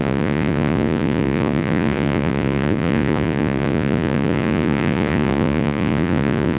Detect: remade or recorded remade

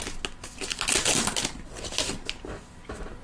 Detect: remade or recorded recorded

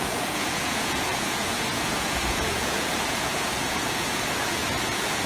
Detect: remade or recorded remade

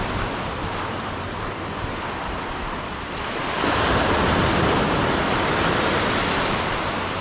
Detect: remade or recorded remade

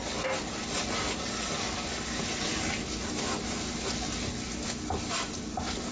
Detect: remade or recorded recorded